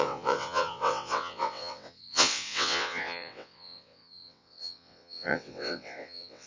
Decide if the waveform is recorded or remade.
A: remade